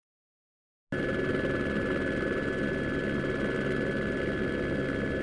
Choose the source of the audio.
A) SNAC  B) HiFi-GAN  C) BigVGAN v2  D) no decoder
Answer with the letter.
D